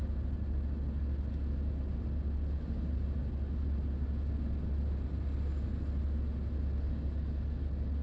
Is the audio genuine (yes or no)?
yes